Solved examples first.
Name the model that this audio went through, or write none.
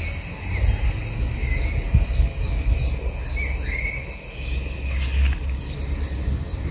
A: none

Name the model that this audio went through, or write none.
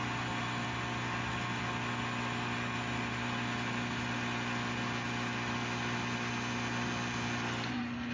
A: none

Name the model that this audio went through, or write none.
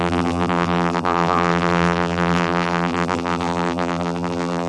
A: vocoder, BigVGAN v2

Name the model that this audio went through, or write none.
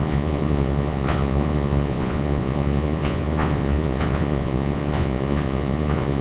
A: vocoder, Vocos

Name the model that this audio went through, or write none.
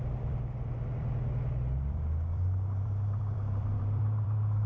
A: vocoder, BigVGAN v2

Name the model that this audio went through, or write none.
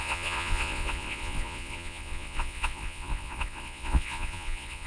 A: vocoder, Vocos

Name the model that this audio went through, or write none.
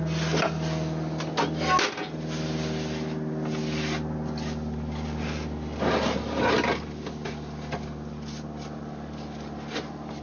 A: none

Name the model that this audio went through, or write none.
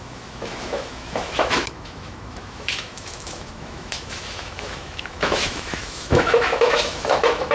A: autoencoder, DAC-VAE